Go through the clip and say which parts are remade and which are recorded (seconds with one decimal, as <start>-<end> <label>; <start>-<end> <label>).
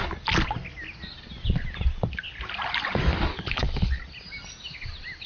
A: 0.0-3.3 recorded; 3.3-4.0 remade; 4.0-5.3 recorded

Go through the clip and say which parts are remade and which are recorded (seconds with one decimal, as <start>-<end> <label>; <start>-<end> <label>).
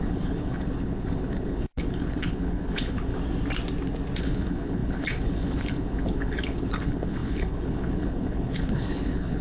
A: 0.0-3.1 remade; 3.1-4.2 recorded; 4.2-9.4 remade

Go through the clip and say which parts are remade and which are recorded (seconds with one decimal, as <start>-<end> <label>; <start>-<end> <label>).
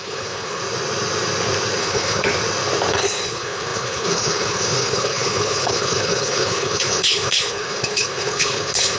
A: 0.0-0.6 remade; 0.6-1.8 recorded; 1.8-2.3 remade; 2.3-2.9 recorded; 2.9-9.0 remade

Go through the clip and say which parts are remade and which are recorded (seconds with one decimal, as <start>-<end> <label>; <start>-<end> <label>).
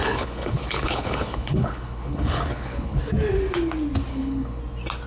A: 0.0-3.0 remade; 3.0-4.1 recorded; 4.1-4.6 remade; 4.6-5.1 recorded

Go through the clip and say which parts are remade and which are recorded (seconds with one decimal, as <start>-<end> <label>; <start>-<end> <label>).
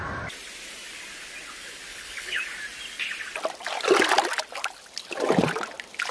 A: 0.0-1.9 recorded; 1.9-2.4 remade; 2.4-6.1 recorded